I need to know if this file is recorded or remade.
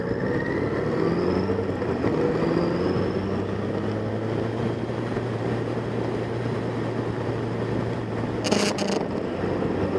recorded